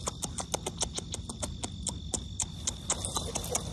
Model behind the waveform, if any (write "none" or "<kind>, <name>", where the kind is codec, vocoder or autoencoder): none